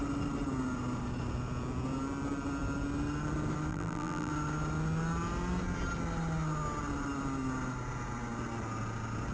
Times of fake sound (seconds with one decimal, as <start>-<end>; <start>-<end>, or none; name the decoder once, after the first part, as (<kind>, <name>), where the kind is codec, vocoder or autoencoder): 3.7-4.3 (vocoder, BigVGAN v2)